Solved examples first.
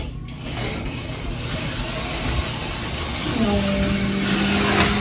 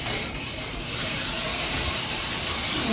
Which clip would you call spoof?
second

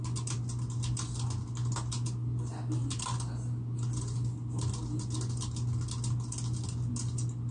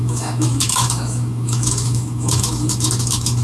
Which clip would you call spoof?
second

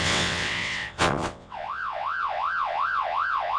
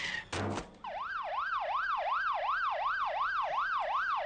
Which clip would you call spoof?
first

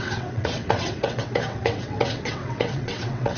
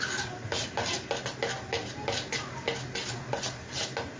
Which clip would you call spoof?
first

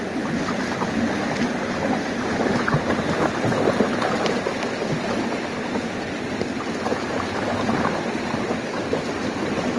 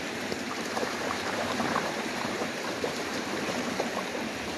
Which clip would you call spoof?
second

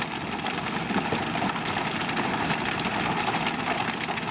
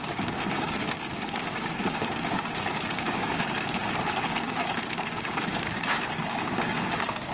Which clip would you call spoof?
second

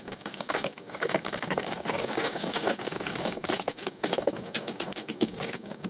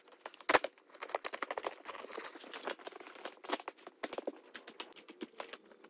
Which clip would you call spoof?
first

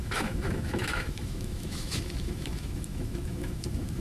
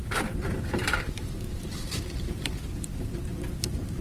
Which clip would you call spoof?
first